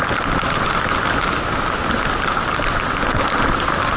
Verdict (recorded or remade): recorded